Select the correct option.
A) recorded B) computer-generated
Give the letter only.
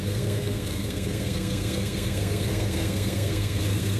B